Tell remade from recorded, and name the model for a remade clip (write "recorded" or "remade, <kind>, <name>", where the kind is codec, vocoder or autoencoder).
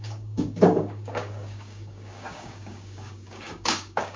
remade, codec, DAC